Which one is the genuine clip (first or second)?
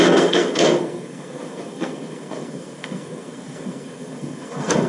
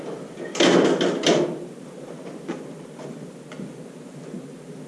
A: second